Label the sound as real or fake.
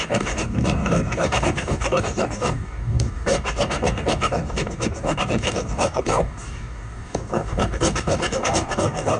fake